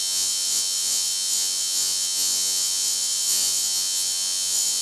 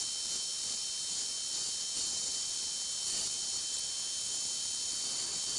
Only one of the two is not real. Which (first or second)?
first